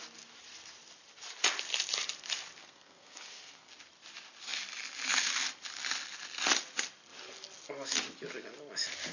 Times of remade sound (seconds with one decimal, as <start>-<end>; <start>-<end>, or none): 2.6-3.7